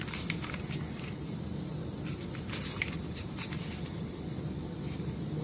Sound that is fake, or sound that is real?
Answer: real